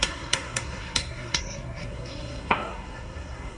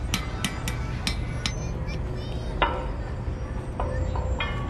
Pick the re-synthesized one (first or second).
first